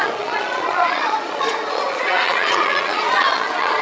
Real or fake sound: fake